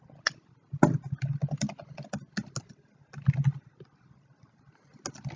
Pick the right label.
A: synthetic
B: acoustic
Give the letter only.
B